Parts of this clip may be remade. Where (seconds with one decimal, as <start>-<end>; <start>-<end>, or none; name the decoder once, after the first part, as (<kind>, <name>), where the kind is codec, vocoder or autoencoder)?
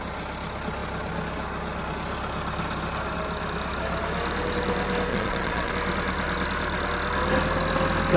5.1-5.7 (vocoder, Vocos)